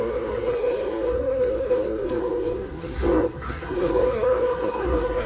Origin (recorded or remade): remade